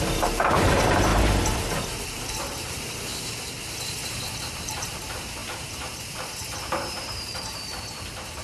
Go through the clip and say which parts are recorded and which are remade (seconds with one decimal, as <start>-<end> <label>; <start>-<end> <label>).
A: 0.0-1.1 remade; 1.1-2.4 recorded; 2.4-3.1 remade; 3.1-4.1 recorded; 4.1-8.4 remade